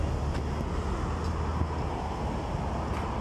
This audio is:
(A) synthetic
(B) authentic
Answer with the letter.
B